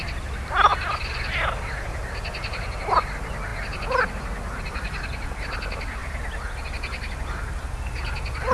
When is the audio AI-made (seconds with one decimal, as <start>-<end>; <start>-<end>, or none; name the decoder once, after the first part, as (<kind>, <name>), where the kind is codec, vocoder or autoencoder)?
none